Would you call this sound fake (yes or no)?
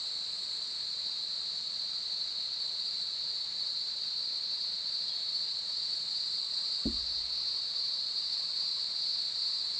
yes